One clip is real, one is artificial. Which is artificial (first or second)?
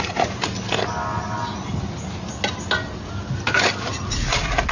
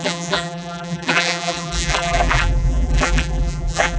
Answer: second